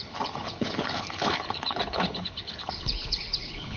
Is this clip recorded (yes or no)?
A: no